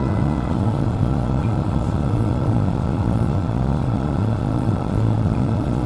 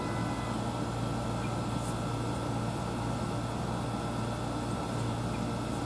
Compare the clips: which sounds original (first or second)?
second